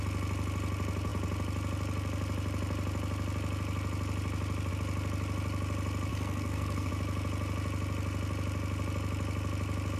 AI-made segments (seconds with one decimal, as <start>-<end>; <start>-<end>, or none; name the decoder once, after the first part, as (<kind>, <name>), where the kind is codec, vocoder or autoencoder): 6.1-6.9 (codec, SNAC)